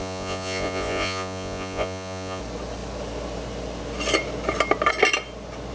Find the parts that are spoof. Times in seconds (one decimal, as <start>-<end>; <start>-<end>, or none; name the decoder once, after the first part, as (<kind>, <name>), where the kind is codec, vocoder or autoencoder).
0.0-2.4 (vocoder, Vocos)